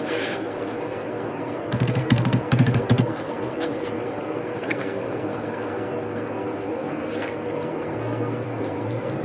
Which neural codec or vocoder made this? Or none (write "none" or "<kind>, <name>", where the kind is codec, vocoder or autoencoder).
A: codec, SNAC